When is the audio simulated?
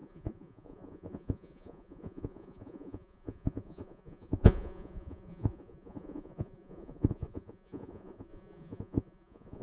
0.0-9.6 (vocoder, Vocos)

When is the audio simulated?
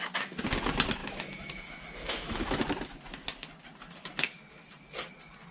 1.0-2.6 (autoencoder, DAC-VAE)